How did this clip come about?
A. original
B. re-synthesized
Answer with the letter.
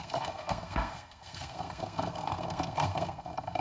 B